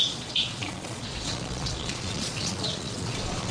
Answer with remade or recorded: remade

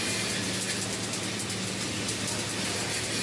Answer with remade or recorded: recorded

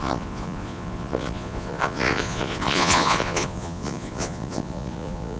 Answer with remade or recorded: remade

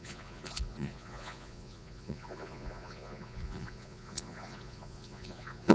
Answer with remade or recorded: remade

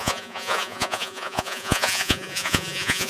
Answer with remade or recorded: remade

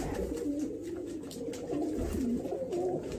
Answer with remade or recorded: recorded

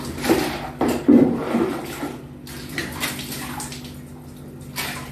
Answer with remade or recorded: recorded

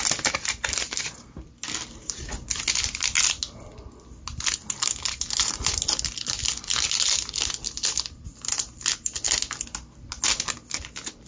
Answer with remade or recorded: recorded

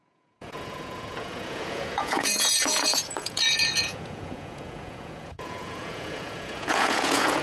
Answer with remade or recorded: remade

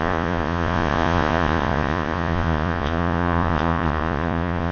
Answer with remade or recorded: remade